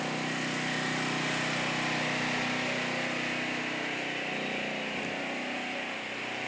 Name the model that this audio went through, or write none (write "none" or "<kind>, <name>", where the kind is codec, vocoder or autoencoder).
none